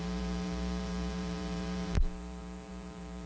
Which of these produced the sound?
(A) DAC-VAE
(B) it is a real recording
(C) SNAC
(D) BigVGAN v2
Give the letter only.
D